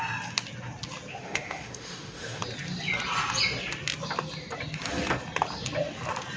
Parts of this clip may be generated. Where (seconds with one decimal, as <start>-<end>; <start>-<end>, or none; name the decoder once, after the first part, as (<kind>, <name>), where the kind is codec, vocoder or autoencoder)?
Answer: 1.1-2.4 (autoencoder, DAC-VAE)